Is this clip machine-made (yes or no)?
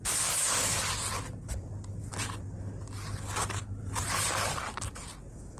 no